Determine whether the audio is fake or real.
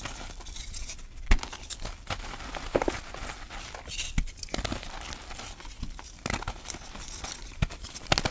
real